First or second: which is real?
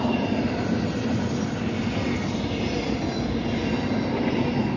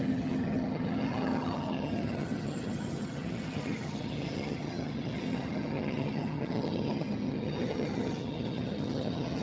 first